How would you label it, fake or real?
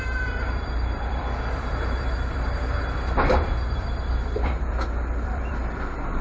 fake